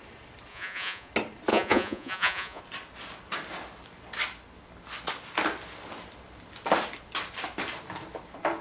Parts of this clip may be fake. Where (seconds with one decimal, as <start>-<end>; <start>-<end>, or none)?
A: 0.5-1.1; 1.5-2.6